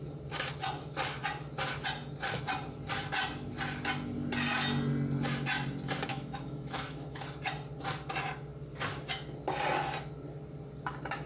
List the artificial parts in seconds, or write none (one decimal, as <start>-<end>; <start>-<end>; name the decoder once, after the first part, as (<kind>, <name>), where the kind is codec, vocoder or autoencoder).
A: 6.1-7.2 (autoencoder, DAC-VAE)